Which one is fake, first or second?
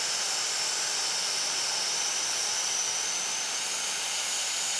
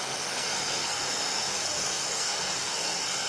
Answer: second